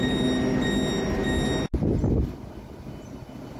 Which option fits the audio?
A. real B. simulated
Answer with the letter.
A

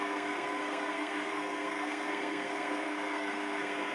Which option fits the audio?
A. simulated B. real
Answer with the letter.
A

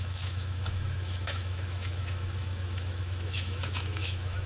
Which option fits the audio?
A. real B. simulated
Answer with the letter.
B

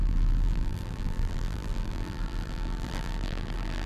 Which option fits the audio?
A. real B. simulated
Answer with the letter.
B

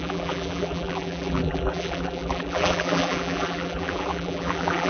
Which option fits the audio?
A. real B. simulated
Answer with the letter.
B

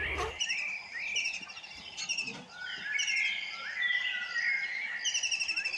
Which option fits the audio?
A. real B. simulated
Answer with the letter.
A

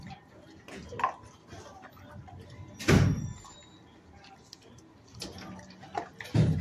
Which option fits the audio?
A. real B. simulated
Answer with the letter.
A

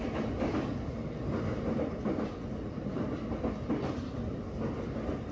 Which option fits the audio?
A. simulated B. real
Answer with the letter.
B